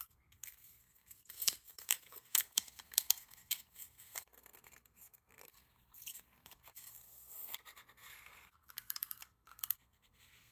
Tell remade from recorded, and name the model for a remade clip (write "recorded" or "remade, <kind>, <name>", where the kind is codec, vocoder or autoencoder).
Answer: remade, codec, SNAC